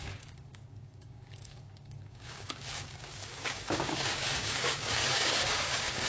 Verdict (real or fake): fake